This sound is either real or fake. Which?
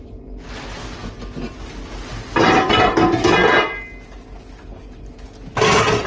real